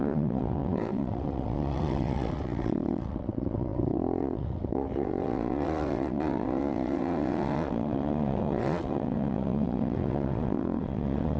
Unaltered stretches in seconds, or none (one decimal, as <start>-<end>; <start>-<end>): none